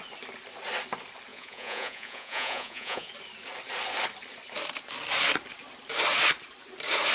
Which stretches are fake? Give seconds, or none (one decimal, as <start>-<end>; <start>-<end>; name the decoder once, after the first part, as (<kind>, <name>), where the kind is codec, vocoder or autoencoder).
1.3-3.1 (vocoder, Vocos)